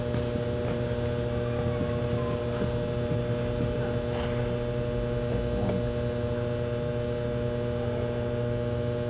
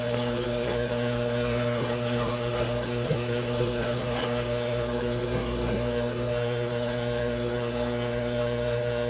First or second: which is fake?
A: second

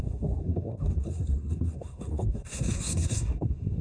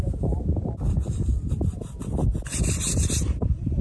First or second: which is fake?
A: first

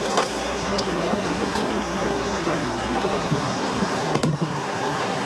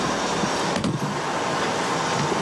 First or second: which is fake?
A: first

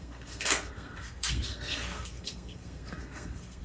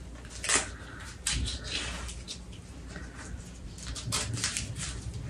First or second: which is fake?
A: first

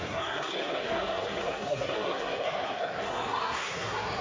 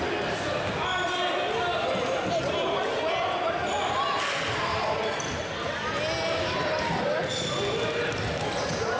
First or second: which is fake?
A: first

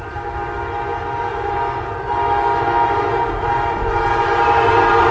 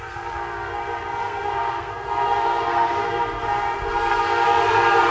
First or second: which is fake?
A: second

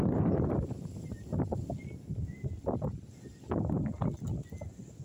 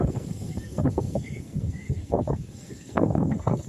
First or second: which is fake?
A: second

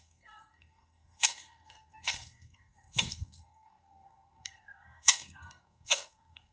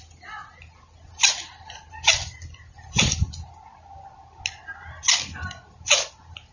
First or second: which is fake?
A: first